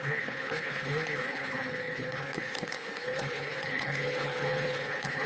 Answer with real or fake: fake